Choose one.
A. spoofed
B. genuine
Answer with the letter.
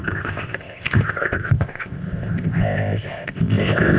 A